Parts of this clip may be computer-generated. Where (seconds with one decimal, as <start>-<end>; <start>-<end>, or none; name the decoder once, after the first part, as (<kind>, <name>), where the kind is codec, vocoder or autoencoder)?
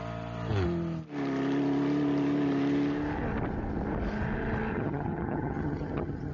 4.7-6.3 (vocoder, HiFi-GAN)